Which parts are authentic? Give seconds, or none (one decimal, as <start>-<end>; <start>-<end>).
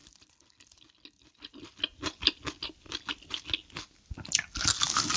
0.0-5.2